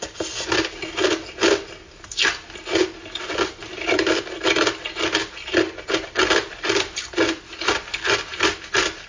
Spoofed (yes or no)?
no